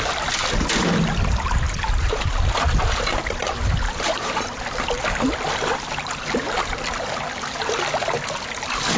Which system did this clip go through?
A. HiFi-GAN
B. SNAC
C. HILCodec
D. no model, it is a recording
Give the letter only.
D